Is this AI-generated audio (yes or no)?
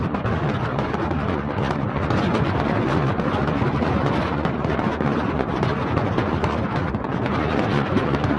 yes